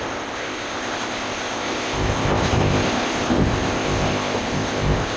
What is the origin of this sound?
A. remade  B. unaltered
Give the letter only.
A